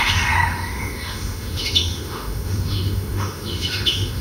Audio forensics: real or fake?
fake